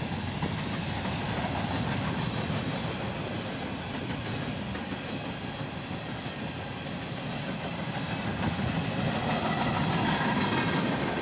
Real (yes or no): yes